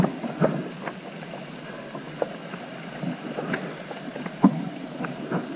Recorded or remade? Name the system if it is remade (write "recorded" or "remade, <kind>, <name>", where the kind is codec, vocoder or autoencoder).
recorded